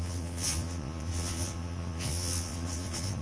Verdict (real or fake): fake